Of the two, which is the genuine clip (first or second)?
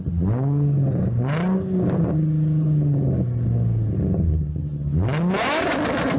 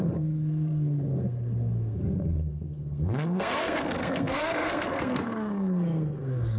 first